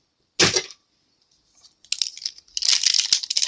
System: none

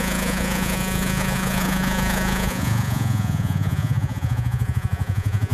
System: vocoder, Vocos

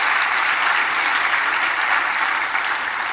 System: none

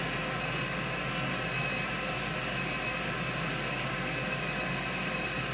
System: none